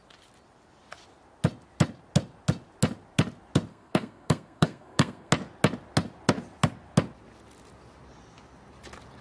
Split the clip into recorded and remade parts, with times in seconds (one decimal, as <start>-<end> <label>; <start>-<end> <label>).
0.0-3.7 recorded; 3.7-5.3 remade; 5.3-9.2 recorded